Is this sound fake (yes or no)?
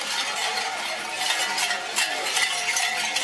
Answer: no